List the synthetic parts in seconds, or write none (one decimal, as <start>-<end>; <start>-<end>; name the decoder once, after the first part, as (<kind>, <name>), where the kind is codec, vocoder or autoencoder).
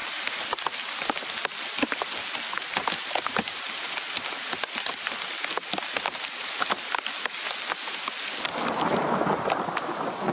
none